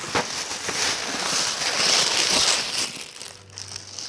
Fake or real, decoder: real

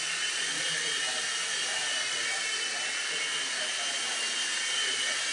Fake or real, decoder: real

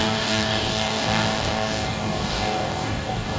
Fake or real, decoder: fake, codec, DAC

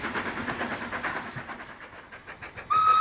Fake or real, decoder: real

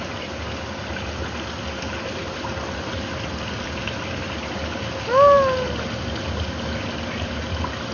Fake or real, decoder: real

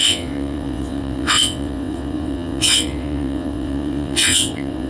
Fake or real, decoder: fake, vocoder, WaveNeXt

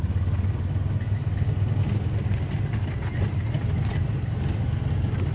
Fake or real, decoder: real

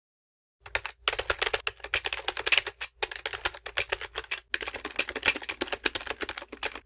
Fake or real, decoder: real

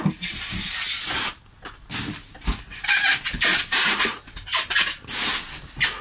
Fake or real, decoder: real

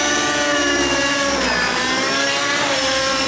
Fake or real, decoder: fake, vocoder, BigVGAN v2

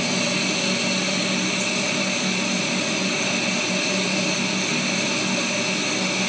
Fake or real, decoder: real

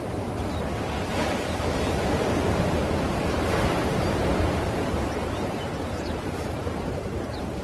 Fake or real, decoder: fake, vocoder, BigVGAN v2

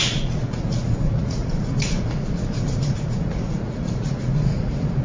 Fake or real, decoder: fake, vocoder, Vocos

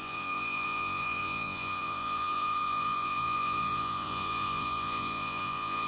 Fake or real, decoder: fake, vocoder, Vocos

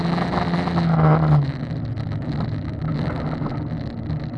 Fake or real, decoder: real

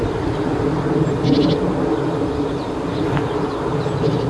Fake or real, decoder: real